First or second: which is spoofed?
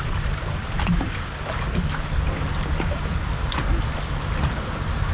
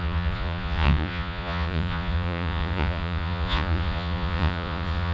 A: second